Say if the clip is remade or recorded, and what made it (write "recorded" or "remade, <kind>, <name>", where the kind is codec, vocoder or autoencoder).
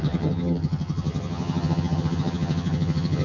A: remade, vocoder, HiFi-GAN